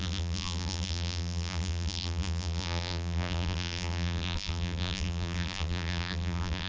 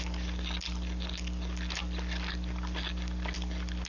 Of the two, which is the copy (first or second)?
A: first